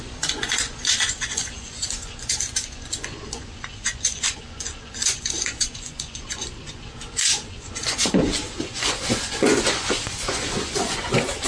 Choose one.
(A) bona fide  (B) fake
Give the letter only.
B